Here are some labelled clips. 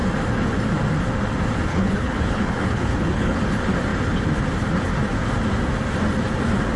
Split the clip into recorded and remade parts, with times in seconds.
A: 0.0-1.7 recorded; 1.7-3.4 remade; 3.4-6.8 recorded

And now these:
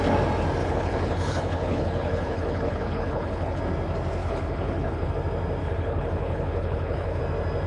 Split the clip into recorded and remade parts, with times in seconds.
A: 0.0-0.6 recorded; 0.6-3.6 remade; 3.6-4.2 recorded; 4.2-5.1 remade; 5.1-5.6 recorded; 5.6-7.2 remade; 7.2-7.7 recorded

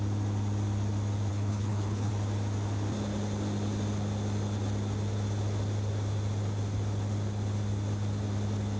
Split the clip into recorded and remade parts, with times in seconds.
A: 0.0-1.3 recorded; 1.3-2.1 remade; 2.1-8.8 recorded

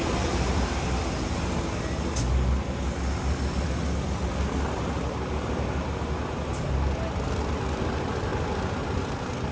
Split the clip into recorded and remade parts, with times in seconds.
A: 0.0-9.5 recorded

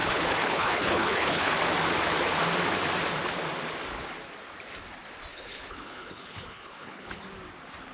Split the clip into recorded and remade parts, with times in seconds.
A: 0.0-1.5 remade; 1.5-5.3 recorded; 5.3-7.2 remade; 7.2-7.9 recorded

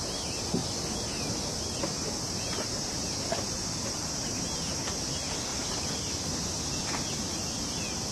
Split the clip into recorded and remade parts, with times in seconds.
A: 0.0-8.1 recorded

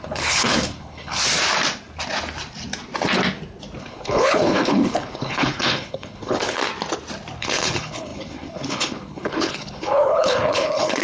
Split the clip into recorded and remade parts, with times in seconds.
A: 0.0-1.2 remade; 1.2-3.8 recorded; 3.8-6.6 remade; 6.6-7.4 recorded; 7.4-11.0 remade